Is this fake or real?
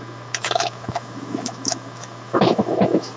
fake